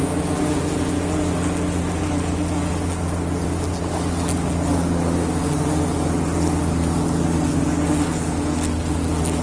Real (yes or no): yes